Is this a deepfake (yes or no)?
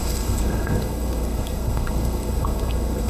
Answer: yes